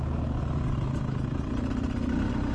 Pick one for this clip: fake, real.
real